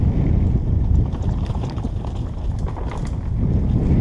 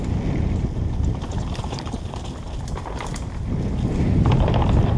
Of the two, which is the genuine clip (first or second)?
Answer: first